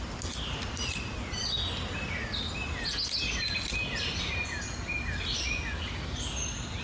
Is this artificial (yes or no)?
no